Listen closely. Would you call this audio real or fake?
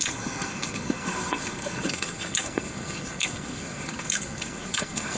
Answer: fake